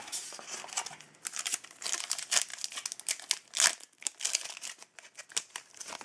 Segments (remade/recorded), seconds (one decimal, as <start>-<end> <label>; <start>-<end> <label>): 0.0-6.0 recorded